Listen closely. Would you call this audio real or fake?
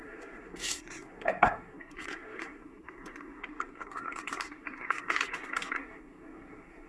fake